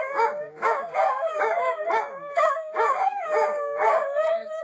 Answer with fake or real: fake